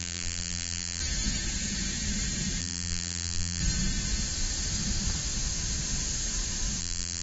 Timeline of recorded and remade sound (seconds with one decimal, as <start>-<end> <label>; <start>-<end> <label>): 0.0-1.0 remade; 1.0-2.6 recorded; 2.6-3.6 remade; 3.6-6.8 recorded; 6.8-7.2 remade